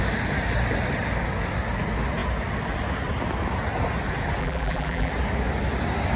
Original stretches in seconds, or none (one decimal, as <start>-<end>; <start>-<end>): 0.0-4.4; 5.1-6.2